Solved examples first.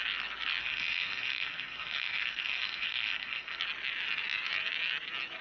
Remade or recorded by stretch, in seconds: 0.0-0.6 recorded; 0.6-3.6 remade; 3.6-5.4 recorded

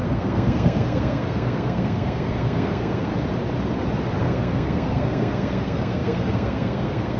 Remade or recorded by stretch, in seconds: 0.0-3.1 remade; 3.1-4.2 recorded; 4.2-7.2 remade

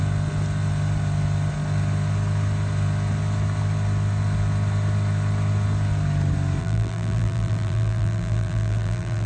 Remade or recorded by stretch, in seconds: 0.0-6.6 recorded; 6.6-9.3 remade

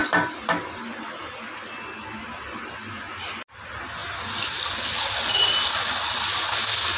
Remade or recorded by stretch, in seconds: 0.0-7.0 recorded

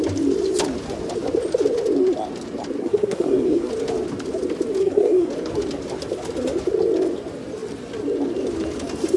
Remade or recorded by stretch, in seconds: 0.0-2.8 recorded; 2.8-3.7 remade; 3.7-4.8 recorded; 4.8-5.3 remade; 5.3-9.2 recorded